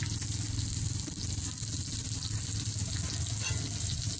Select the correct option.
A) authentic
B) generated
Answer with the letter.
A